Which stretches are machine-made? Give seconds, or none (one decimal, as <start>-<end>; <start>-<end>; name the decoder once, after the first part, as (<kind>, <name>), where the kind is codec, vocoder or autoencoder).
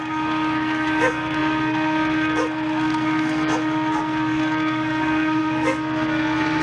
0.0-6.6 (codec, SNAC)